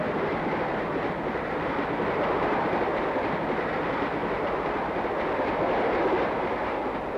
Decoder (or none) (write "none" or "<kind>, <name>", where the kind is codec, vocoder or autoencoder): none